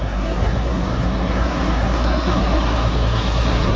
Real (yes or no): no